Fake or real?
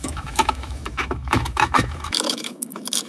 fake